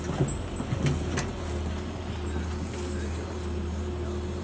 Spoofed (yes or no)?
no